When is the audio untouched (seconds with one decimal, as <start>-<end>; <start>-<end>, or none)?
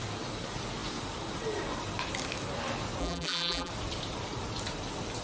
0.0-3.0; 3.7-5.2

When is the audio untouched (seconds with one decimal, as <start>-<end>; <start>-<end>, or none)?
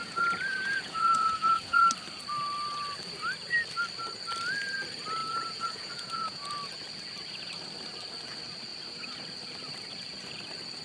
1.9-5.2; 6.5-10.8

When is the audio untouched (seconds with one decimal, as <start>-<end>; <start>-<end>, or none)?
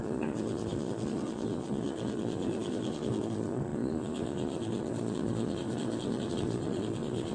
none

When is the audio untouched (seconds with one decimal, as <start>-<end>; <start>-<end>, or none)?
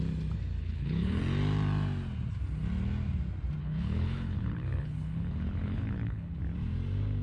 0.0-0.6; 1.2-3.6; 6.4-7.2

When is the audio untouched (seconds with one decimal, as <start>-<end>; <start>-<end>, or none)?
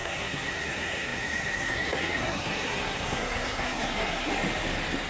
4.3-5.1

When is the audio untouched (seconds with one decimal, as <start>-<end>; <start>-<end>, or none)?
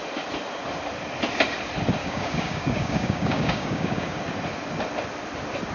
0.0-2.0; 4.2-5.7